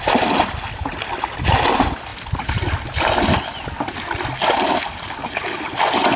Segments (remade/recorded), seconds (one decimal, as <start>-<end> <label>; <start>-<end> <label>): 0.0-6.2 recorded

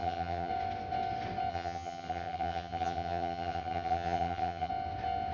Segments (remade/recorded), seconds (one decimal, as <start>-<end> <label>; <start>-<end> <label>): 0.0-0.5 remade; 0.5-1.5 recorded; 1.5-4.7 remade; 4.7-5.3 recorded

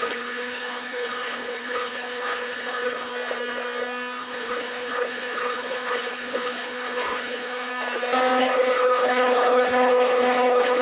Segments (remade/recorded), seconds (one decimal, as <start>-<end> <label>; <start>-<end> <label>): 0.0-3.1 remade; 3.1-4.2 recorded; 4.2-7.7 remade; 7.7-8.4 recorded; 8.4-10.8 remade